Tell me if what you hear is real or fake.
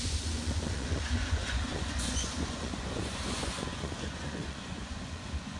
fake